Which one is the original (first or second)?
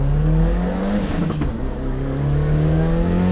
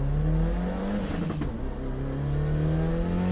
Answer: second